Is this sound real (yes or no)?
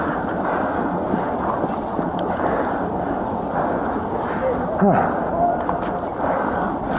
yes